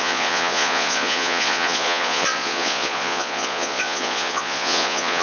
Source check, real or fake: fake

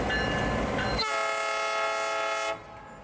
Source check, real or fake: real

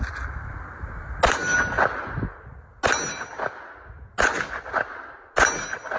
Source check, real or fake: real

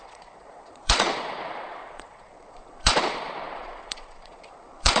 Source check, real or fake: fake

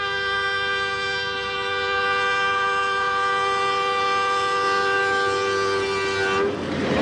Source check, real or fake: real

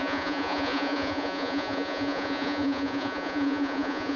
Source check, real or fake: fake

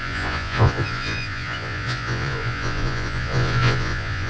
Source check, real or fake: fake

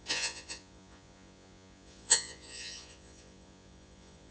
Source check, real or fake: fake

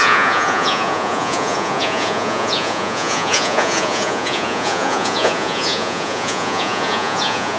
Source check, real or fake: fake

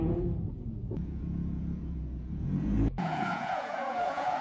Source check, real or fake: fake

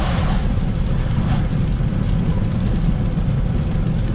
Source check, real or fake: real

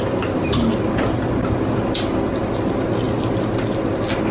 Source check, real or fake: real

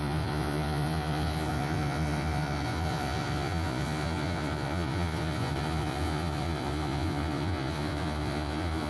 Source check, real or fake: fake